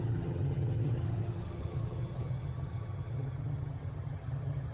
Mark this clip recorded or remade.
remade